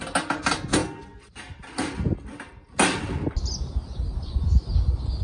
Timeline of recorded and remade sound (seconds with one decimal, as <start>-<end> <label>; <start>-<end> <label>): 0.0-3.8 recorded; 3.8-4.4 remade; 4.4-5.2 recorded